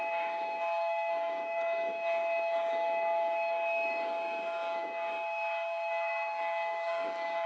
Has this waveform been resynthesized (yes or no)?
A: yes